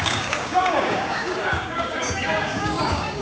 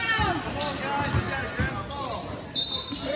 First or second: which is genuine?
second